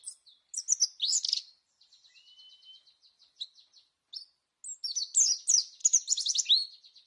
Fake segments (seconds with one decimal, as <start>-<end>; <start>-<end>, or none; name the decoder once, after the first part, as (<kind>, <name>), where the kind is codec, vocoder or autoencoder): none